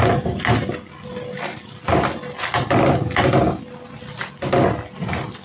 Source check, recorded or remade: recorded